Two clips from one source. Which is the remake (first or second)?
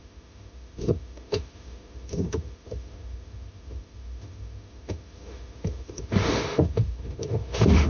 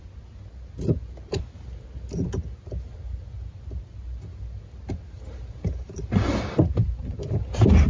first